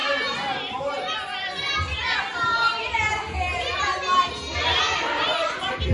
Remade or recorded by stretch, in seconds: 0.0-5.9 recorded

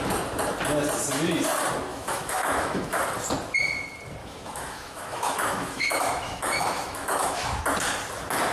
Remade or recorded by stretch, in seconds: 0.0-1.9 recorded; 1.9-3.0 remade; 3.0-4.2 recorded; 4.2-7.6 remade; 7.6-8.5 recorded

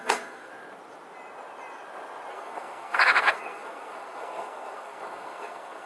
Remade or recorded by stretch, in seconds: 0.0-0.5 remade; 0.5-2.3 recorded; 2.3-5.9 remade

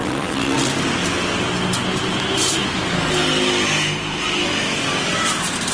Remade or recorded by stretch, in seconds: 0.0-0.7 remade; 0.7-5.7 recorded

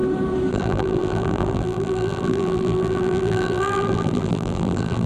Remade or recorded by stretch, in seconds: 0.0-0.5 recorded; 0.5-5.1 remade